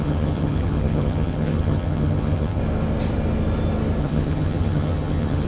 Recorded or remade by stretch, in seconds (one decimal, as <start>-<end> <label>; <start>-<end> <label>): 0.0-2.6 remade; 2.6-4.0 recorded; 4.0-5.5 remade